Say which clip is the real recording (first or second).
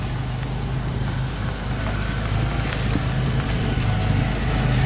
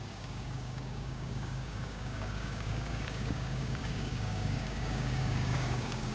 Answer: first